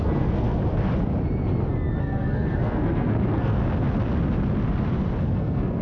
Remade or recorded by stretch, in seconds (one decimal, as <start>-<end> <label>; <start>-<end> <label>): 0.0-0.6 remade; 0.6-2.0 recorded; 2.0-3.6 remade; 3.6-5.2 recorded; 5.2-5.8 remade